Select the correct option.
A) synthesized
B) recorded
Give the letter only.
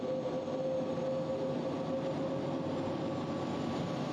B